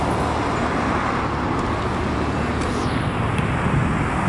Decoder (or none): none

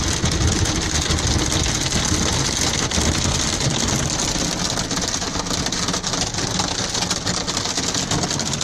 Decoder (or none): none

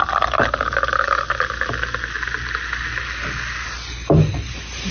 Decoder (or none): none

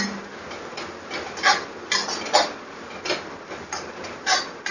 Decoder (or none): none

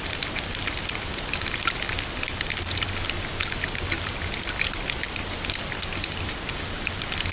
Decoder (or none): none